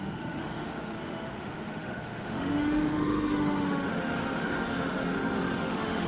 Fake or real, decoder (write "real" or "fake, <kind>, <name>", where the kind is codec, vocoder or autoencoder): fake, autoencoder, DAC-VAE